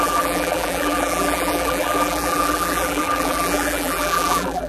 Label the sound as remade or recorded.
remade